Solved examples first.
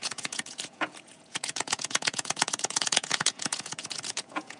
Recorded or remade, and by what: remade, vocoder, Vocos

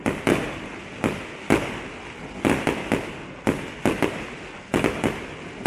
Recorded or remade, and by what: recorded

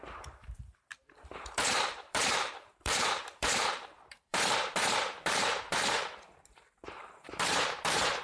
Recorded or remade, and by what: remade, vocoder, BigVGAN v2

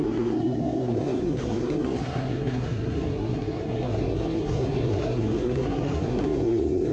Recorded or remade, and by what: remade, codec, SNAC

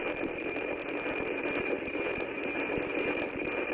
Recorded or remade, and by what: recorded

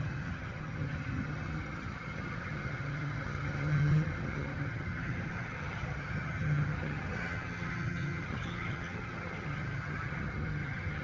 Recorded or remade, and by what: remade, vocoder, HiFi-GAN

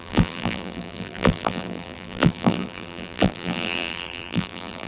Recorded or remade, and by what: remade, vocoder, BigVGAN v2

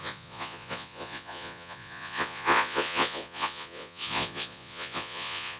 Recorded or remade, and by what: remade, vocoder, Vocos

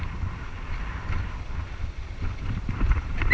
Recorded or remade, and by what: remade, vocoder, BigVGAN v2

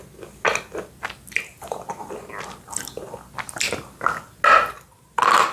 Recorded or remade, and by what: recorded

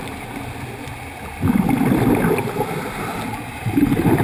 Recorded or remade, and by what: recorded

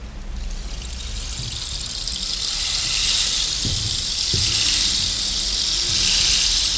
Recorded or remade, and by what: recorded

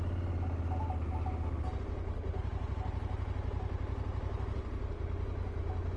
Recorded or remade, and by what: recorded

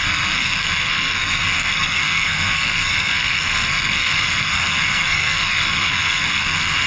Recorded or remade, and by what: remade, codec, SNAC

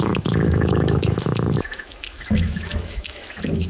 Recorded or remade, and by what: remade, autoencoder, DAC-VAE